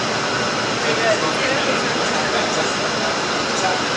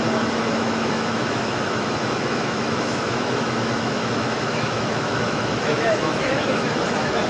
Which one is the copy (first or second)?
second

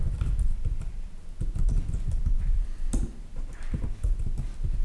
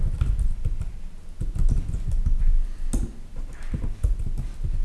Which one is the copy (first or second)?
first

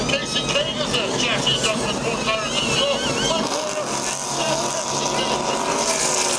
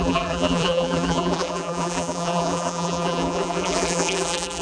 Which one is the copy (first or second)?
second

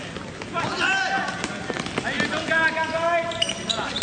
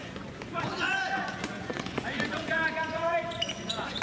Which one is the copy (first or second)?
second